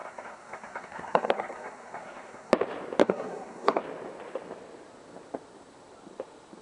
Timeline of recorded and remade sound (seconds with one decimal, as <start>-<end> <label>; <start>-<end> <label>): 0.0-2.5 remade; 2.5-3.0 recorded; 3.0-3.8 remade; 3.8-6.6 recorded

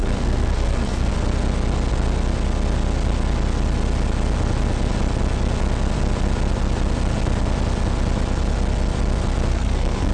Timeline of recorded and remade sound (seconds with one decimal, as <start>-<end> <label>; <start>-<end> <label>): 0.0-1.1 remade; 1.1-9.5 recorded; 9.5-10.1 remade

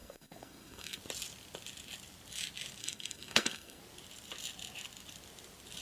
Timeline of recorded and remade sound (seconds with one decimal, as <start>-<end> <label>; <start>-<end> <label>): 0.0-1.0 remade; 1.0-2.8 recorded; 2.8-3.8 remade; 3.8-5.8 recorded

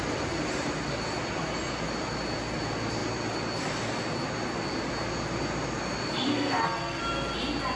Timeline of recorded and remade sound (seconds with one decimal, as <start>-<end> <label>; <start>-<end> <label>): 0.0-6.3 recorded; 6.3-7.0 remade; 7.0-7.8 recorded

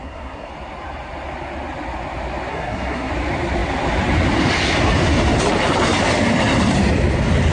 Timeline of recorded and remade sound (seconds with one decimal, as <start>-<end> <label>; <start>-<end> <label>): 0.0-0.5 remade; 0.5-2.5 recorded; 2.5-3.1 remade; 3.1-7.5 recorded